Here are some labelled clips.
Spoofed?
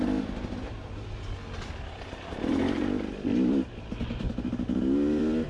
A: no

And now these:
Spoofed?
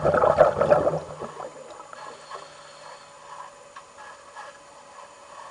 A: no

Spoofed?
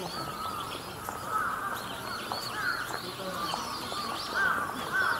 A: no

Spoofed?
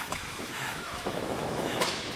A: yes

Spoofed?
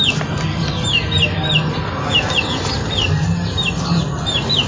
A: no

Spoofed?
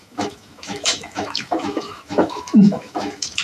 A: yes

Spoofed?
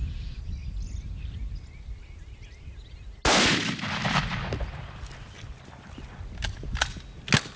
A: no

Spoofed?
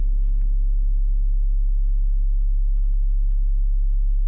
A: no